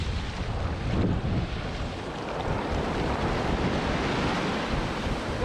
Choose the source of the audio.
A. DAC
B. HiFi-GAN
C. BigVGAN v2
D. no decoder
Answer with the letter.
D